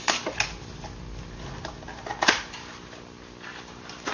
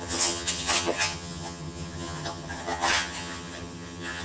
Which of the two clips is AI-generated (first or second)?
second